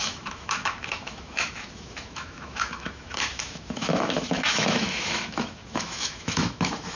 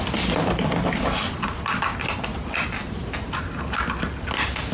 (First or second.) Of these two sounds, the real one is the second